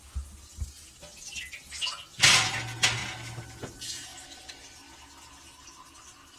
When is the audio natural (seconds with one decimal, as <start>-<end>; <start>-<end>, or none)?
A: 0.0-6.4